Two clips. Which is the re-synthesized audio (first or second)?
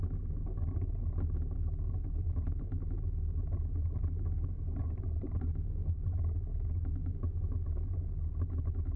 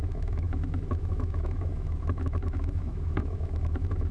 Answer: second